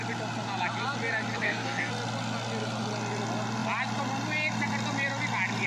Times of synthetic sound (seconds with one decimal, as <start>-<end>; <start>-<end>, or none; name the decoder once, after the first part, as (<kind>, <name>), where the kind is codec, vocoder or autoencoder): 1.3-1.9 (codec, SNAC)

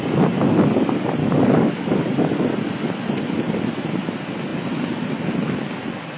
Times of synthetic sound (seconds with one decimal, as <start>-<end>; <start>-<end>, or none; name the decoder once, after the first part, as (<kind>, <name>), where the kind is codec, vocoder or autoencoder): 1.2-2.0 (codec, DAC)

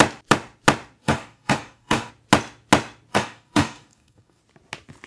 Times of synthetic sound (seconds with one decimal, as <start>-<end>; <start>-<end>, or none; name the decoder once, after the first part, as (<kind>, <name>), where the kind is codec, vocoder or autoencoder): 1.0-2.1 (codec, DAC); 3.1-4.4

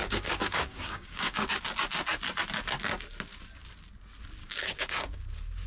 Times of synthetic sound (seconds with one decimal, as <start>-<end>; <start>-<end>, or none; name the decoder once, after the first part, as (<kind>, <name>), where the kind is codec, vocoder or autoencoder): 0.0-1.6 (codec, DAC); 4.4-5.2

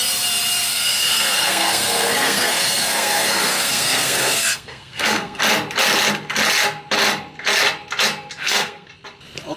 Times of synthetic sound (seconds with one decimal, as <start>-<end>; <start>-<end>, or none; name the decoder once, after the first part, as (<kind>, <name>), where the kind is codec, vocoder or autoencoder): 0.7-5.4 (codec, SNAC); 8.4-8.9